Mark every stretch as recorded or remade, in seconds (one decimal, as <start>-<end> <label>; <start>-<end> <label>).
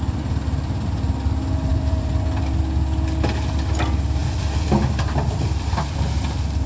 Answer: 0.0-1.7 recorded; 1.7-2.4 remade; 2.4-4.2 recorded; 4.2-6.0 remade; 6.0-6.7 recorded